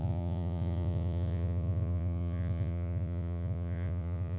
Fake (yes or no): yes